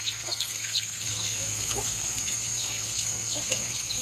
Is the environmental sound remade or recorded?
remade